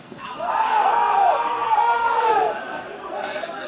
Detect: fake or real fake